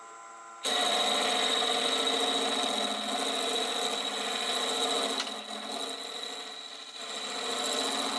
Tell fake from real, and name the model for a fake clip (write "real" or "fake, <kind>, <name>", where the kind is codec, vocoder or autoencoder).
real